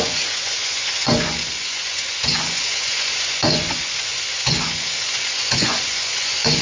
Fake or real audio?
fake